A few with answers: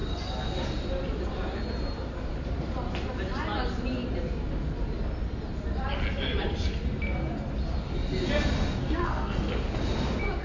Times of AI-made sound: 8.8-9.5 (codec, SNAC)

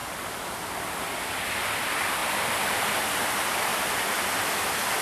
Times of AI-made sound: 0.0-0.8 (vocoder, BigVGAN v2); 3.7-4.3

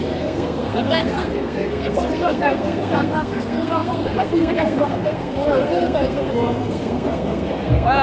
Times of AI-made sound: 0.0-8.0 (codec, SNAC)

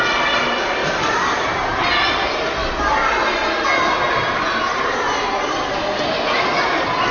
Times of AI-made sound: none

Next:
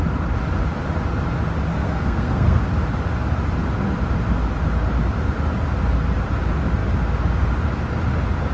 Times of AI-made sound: 1.7-2.6 (codec, SNAC)

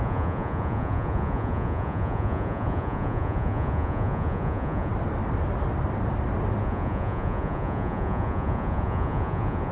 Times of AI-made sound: 0.0-4.9 (vocoder, Vocos); 6.6-9.7